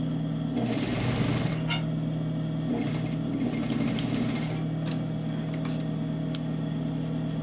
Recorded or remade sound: recorded